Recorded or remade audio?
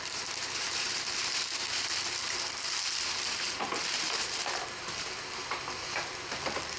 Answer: remade